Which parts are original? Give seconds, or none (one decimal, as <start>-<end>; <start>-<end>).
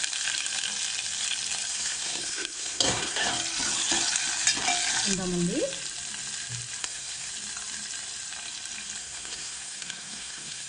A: 0.0-1.7; 3.3-6.8; 7.3-9.0